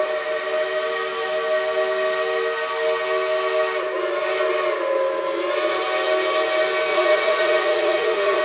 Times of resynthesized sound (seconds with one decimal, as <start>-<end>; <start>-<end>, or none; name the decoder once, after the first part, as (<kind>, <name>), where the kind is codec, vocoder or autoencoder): 6.9-8.4 (vocoder, Vocos)